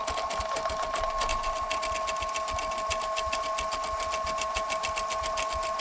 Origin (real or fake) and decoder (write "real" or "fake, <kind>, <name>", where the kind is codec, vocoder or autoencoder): real